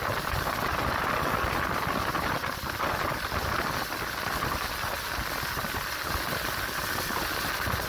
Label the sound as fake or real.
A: real